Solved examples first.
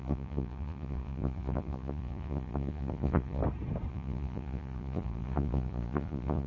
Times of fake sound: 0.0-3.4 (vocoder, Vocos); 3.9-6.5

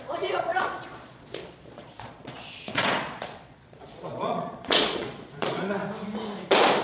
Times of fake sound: 0.0-5.8 (vocoder, Vocos)

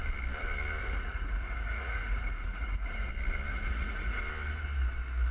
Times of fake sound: 0.8-3.1 (vocoder, Vocos); 3.5-4.2

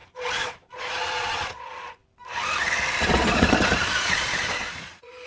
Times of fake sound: 0.0-2.0 (vocoder, Vocos); 3.0-5.3

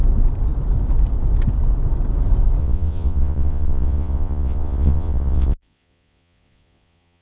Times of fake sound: 2.6-7.2 (vocoder, Vocos)

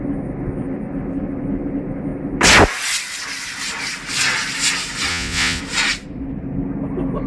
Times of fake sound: 5.1-5.6 (vocoder, Vocos)